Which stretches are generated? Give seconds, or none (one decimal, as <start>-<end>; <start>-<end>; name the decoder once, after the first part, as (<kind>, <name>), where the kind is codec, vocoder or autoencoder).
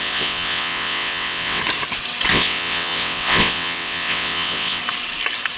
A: 0.0-1.6 (vocoder, WaveNeXt); 2.3-4.8